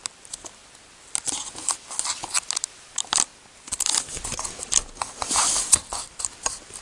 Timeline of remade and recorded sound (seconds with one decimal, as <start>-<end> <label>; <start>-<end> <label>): 0.0-6.8 recorded